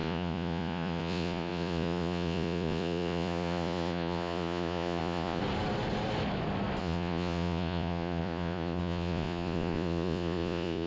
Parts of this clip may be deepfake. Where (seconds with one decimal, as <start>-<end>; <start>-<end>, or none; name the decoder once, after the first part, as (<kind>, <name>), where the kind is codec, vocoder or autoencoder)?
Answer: 0.0-5.4 (vocoder, Vocos); 6.8-10.9